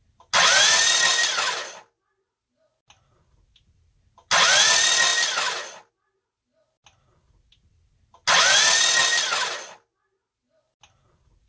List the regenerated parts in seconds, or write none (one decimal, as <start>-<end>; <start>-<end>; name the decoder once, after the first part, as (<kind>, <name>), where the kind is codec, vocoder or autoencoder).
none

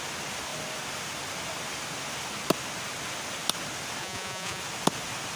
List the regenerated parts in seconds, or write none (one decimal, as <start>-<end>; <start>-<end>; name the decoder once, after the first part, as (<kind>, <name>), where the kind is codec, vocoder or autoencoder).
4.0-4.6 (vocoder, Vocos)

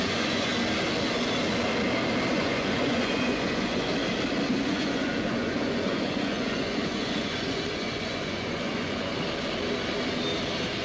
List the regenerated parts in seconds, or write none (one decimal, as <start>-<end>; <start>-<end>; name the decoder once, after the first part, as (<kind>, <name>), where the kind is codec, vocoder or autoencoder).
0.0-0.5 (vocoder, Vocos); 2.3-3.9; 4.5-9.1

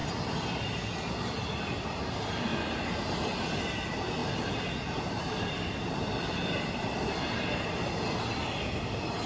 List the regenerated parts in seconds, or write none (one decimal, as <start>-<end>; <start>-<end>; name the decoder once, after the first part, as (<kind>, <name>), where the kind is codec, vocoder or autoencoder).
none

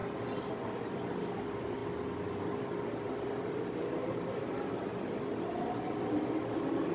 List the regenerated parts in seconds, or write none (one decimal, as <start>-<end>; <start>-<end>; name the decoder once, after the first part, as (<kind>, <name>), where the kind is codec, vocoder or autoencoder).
none